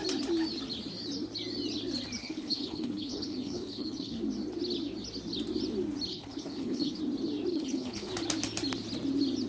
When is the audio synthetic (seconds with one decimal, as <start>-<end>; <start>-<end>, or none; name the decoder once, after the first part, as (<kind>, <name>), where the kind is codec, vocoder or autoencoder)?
2.2-4.2 (codec, HILCodec); 6.1-7.0; 7.5-8.1